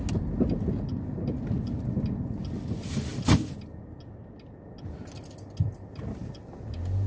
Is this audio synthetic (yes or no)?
no